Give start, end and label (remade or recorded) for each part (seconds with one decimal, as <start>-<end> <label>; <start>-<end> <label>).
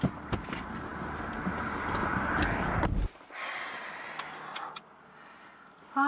0.0-6.1 recorded